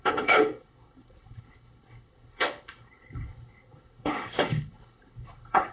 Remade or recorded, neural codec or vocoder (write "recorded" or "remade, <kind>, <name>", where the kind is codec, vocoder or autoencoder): remade, codec, HILCodec